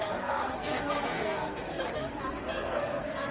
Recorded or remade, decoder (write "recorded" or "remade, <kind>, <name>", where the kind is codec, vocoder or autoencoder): remade, codec, SNAC